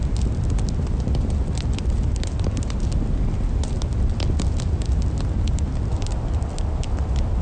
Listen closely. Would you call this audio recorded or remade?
recorded